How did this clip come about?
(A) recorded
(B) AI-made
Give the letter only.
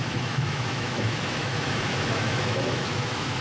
B